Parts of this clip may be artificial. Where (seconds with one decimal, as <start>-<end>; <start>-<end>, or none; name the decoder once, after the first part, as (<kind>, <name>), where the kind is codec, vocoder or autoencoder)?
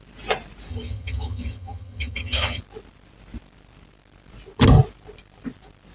0.7-2.6 (vocoder, HiFi-GAN)